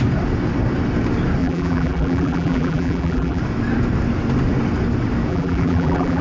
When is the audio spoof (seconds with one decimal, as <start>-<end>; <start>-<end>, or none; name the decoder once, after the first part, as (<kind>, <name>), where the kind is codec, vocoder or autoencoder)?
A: 1.4-3.4 (vocoder, BigVGAN v2); 5.3-6.2